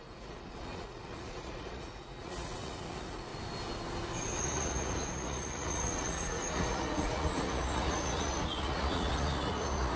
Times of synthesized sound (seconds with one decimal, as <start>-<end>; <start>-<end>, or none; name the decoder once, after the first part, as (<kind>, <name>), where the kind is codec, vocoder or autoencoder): 0.0-3.3 (vocoder, Vocos); 4.4-10.0